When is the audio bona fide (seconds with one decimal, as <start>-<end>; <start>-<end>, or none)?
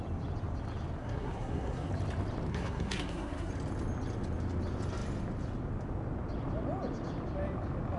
0.0-1.0; 1.9-2.5; 3.5-8.0